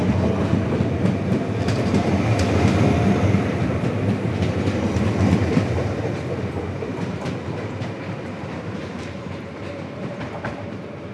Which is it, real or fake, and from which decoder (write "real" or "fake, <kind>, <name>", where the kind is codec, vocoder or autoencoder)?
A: fake, vocoder, BigVGAN v2